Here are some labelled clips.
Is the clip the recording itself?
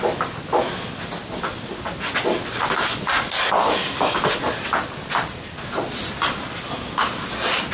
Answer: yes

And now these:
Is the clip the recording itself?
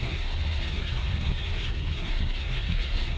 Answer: no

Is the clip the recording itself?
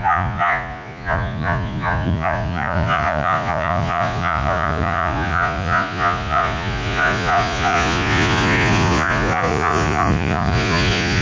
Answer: no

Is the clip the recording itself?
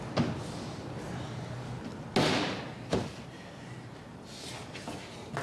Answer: yes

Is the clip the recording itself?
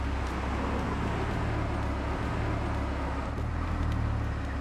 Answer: yes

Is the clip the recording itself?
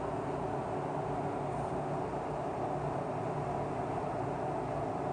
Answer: yes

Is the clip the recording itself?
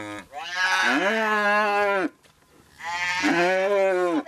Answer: yes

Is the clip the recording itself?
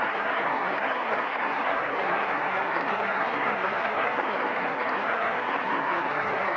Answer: no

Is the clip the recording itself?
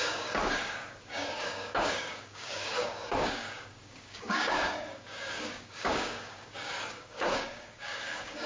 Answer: no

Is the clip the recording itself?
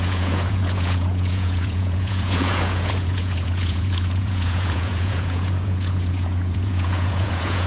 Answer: no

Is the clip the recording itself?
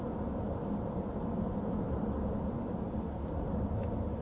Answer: yes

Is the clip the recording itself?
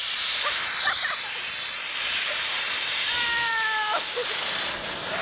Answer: yes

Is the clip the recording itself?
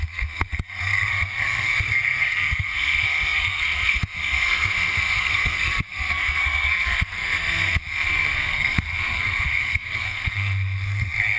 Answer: no